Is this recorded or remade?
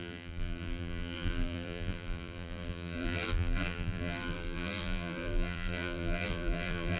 remade